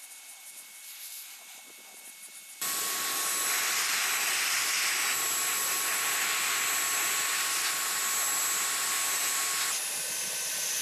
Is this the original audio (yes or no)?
yes